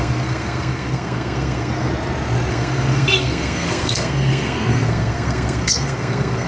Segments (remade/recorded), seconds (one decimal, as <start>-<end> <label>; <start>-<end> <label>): 0.0-1.9 remade; 1.9-2.5 recorded; 2.5-6.5 remade